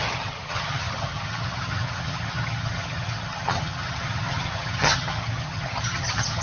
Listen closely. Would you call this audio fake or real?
fake